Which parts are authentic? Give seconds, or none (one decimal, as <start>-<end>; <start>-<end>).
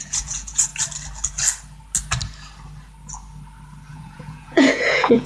0.7-3.9